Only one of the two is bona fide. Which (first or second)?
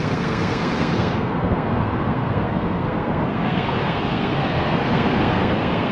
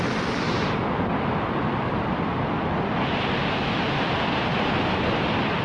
second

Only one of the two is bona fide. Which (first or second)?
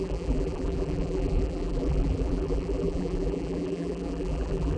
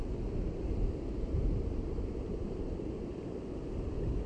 second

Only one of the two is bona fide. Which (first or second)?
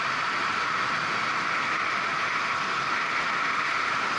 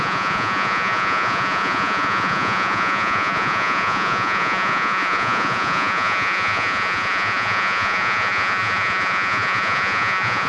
first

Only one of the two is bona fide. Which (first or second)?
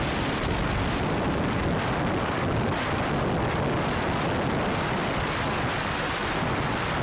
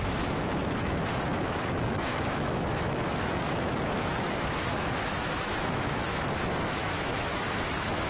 first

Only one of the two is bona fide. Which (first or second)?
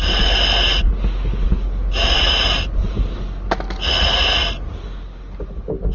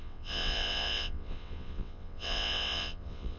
first